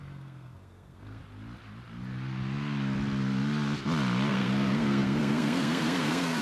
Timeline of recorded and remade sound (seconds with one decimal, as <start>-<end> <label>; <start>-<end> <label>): 0.0-1.2 remade; 1.2-4.3 recorded; 4.3-6.4 remade